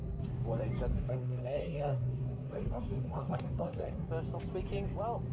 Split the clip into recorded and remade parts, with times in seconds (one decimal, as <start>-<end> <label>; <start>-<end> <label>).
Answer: 0.0-0.9 recorded; 0.9-4.1 remade; 4.1-5.3 recorded